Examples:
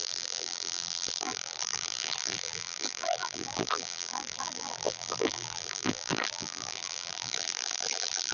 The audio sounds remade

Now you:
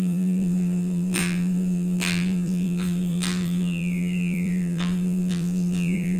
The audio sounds remade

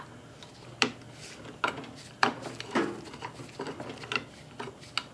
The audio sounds recorded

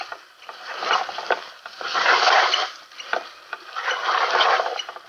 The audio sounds remade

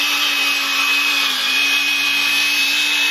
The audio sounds remade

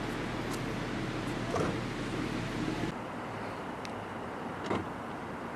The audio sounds recorded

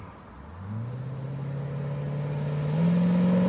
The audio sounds recorded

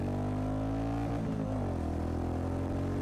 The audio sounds recorded